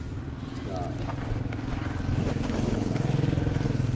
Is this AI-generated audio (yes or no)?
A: no